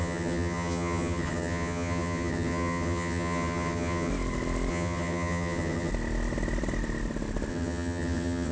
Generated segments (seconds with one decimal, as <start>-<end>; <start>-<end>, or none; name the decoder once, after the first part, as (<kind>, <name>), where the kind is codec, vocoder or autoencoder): 0.0-4.1 (vocoder, HiFi-GAN); 4.7-5.9; 7.5-8.5